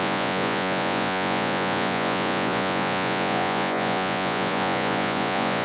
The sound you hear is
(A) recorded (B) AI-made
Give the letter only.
B